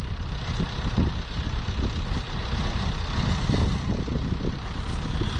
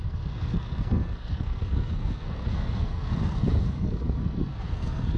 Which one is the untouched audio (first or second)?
first